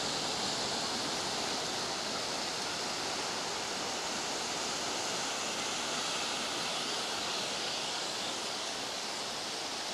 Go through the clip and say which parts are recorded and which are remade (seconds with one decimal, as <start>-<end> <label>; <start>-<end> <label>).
0.0-6.7 recorded; 6.7-9.2 remade; 9.2-9.9 recorded